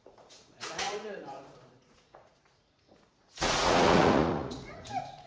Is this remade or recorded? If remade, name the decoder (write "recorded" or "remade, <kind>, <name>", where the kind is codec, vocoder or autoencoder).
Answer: remade, vocoder, Vocos